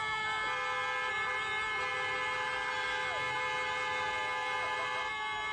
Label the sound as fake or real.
real